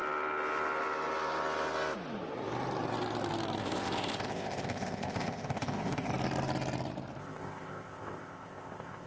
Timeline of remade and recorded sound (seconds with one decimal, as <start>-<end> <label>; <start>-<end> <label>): 0.0-3.6 recorded; 3.6-6.1 remade; 6.1-7.2 recorded; 7.2-9.1 remade